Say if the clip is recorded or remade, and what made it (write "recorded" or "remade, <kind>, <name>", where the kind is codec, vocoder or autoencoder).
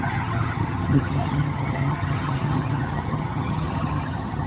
remade, vocoder, HiFi-GAN